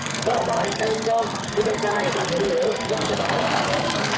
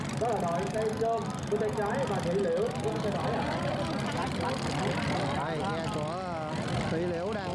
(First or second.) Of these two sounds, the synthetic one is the first